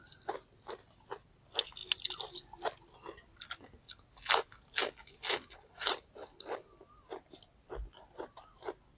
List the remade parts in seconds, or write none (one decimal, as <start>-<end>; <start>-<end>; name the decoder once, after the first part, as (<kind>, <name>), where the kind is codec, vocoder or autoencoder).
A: none